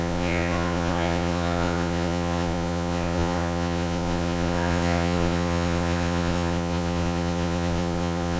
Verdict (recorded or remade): remade